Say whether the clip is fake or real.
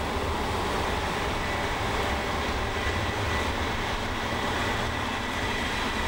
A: real